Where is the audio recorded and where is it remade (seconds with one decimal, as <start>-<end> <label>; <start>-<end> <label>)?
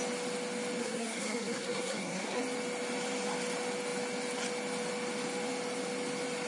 0.0-0.8 recorded; 0.8-2.4 remade; 2.4-6.5 recorded